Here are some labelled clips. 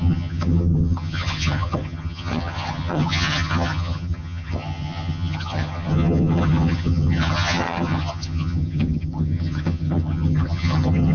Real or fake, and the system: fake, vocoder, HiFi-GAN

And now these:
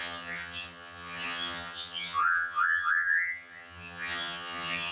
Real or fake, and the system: fake, vocoder, HiFi-GAN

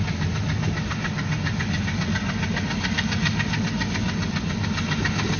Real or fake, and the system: real